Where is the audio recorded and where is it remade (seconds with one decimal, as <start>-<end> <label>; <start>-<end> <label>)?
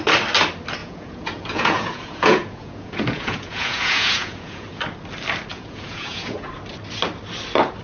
0.0-0.8 recorded; 0.8-4.8 remade; 4.8-5.5 recorded; 5.5-6.5 remade; 6.5-7.8 recorded